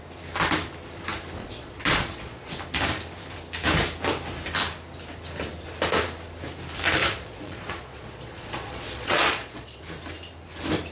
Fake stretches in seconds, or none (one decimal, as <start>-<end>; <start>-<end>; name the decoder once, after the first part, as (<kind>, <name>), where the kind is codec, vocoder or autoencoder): 1.4-2.5 (vocoder, Vocos); 7.0-9.8

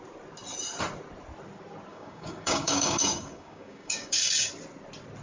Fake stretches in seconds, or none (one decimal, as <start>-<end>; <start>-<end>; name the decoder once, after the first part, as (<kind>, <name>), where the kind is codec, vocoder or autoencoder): 1.9-4.5 (codec, DAC)